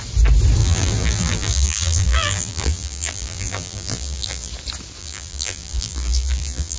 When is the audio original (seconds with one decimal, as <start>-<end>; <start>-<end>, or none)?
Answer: 0.0-0.6; 4.5-5.0